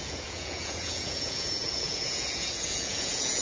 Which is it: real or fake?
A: fake